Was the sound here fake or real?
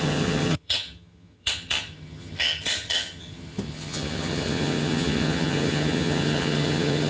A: fake